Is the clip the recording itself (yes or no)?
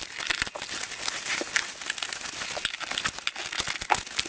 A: yes